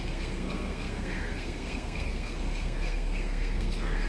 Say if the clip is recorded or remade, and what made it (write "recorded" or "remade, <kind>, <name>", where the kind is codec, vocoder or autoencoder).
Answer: remade, codec, SNAC